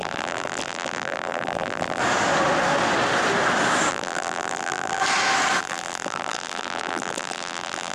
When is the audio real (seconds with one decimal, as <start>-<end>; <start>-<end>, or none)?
2.0-3.9; 5.0-5.6